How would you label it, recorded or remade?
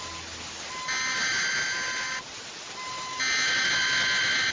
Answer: recorded